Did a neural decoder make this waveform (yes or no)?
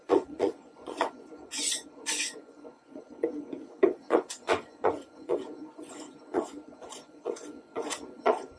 yes